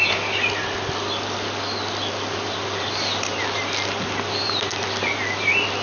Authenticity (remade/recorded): recorded